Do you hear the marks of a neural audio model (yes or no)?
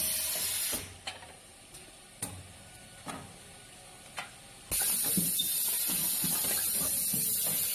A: no